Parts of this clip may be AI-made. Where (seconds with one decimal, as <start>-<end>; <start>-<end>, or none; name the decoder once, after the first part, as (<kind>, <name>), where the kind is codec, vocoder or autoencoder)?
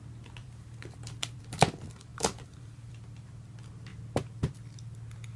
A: 0.4-1.4 (vocoder, BigVGAN v2); 2.1-2.9